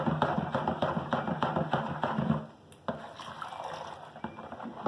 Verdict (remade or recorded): recorded